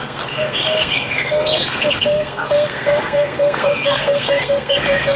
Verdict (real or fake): fake